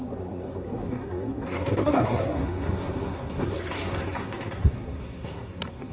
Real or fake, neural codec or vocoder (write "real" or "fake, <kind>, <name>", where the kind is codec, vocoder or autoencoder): fake, codec, SNAC